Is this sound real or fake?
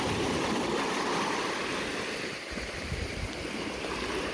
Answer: real